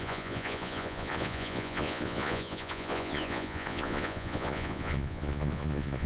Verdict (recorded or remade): remade